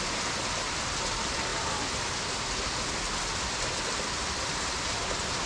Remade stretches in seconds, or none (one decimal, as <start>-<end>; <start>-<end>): none